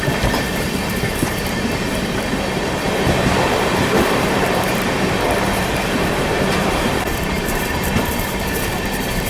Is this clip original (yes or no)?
no